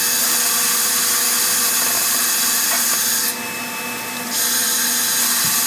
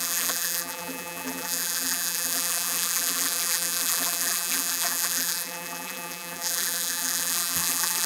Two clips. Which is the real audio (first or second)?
first